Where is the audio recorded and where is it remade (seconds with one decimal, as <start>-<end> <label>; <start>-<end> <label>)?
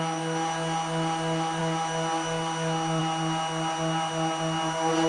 0.0-5.1 recorded